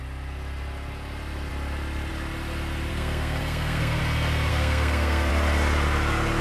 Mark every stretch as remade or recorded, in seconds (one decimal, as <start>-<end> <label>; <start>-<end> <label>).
0.0-2.9 recorded; 2.9-4.0 remade; 4.0-4.5 recorded; 4.5-5.3 remade; 5.3-6.4 recorded